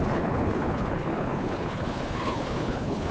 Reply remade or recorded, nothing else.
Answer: remade